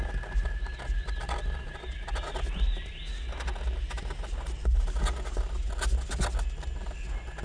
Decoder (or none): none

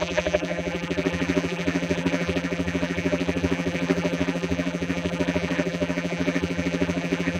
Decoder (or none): vocoder, BigVGAN v2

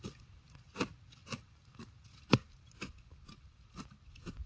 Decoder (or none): none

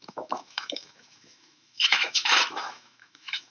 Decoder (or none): autoencoder, DAC-VAE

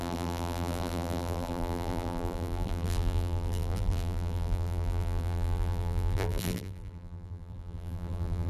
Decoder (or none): vocoder, BigVGAN v2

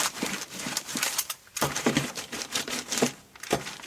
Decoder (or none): vocoder, BigVGAN v2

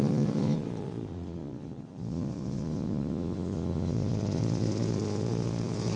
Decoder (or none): vocoder, Vocos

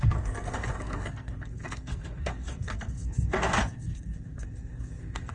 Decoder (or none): codec, SNAC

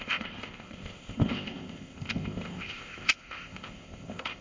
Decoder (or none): codec, ZipCodec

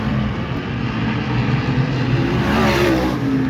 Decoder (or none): none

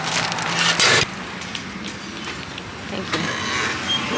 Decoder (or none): none